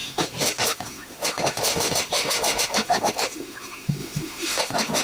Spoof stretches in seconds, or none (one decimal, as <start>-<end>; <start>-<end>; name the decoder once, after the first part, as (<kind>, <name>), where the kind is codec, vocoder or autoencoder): 0.0-5.0 (autoencoder, DAC-VAE)